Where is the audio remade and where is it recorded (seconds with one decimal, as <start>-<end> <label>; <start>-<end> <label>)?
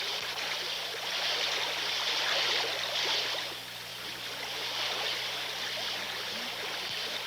0.0-7.3 recorded